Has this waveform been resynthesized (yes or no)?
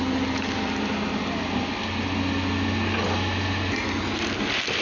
no